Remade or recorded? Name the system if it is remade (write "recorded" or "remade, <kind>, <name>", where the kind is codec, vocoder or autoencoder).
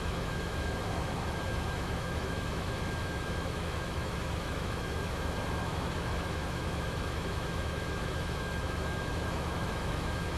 remade, autoencoder, DAC-VAE